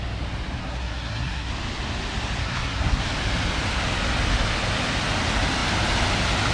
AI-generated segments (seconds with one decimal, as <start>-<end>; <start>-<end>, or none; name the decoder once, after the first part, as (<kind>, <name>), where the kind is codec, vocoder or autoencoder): 0.6-1.5 (codec, SNAC); 2.4-3.0